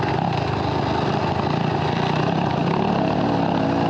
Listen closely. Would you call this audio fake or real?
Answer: real